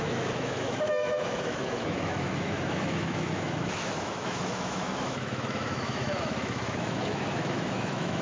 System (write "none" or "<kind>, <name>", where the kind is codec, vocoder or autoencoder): autoencoder, DAC-VAE